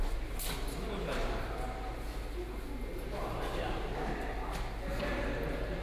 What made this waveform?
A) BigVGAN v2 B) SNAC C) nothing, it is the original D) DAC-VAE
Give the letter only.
C